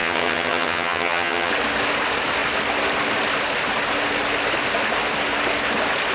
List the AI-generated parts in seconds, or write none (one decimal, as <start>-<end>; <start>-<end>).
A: 0.0-1.5